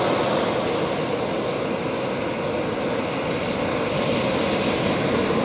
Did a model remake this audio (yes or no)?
no